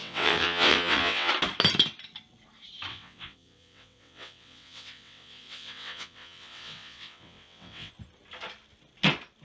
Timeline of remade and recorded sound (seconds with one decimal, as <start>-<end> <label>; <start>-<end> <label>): 0.0-1.3 remade; 1.3-2.9 recorded; 2.9-7.9 remade; 7.9-9.4 recorded